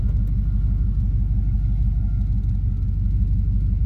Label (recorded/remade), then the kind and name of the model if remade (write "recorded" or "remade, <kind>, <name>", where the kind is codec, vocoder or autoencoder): recorded